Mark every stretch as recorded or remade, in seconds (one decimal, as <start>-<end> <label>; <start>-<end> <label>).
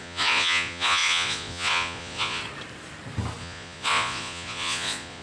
0.0-2.4 remade; 2.4-3.4 recorded; 3.4-5.2 remade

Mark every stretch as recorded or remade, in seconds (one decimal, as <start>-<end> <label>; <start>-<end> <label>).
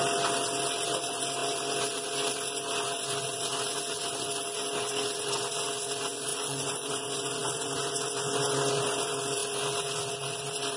0.0-6.3 recorded; 6.3-6.9 remade; 6.9-10.8 recorded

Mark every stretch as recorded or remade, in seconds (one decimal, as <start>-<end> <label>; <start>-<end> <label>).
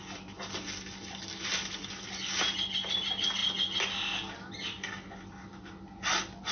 0.0-6.5 recorded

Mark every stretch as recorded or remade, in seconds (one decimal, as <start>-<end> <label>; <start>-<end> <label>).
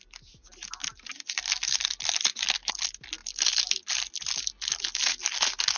0.0-5.8 recorded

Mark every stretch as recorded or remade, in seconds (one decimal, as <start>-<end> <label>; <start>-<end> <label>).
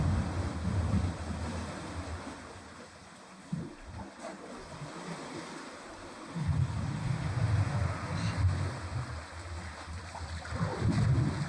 0.0-11.5 recorded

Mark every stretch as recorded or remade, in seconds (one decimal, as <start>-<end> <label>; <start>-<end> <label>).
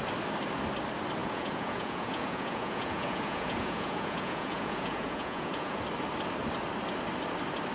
0.0-1.2 recorded; 1.2-5.8 remade; 5.8-7.7 recorded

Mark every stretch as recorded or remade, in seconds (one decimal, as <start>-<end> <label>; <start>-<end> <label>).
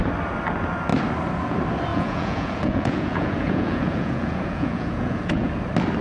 0.0-1.9 recorded; 1.9-5.5 remade; 5.5-6.0 recorded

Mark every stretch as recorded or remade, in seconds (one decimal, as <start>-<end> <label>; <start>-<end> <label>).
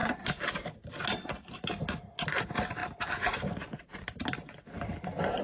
0.0-5.4 recorded